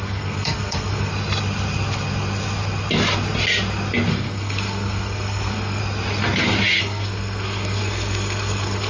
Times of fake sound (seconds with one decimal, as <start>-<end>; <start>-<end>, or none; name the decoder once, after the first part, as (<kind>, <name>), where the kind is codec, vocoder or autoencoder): 0.0-1.1 (codec, SNAC); 4.1-5.8; 6.8-8.9